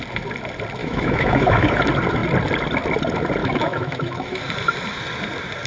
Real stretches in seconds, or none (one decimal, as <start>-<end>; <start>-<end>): 0.0-0.8; 1.8-3.4; 4.4-5.7